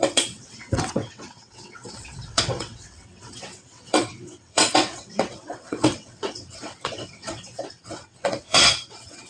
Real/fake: fake